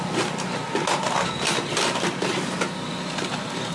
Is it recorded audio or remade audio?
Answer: recorded